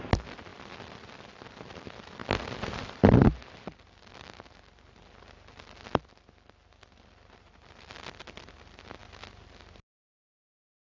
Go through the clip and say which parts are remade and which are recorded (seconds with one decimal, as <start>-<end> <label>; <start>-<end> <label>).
0.0-10.8 recorded